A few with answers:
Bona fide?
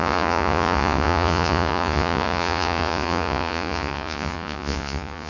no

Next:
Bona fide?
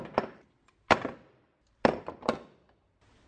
yes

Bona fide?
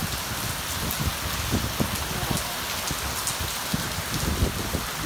yes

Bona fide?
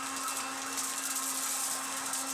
yes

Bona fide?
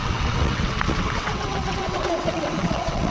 no